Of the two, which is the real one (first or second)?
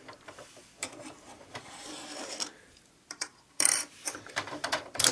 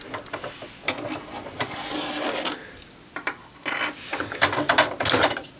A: second